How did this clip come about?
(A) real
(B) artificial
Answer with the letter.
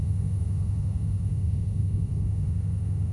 B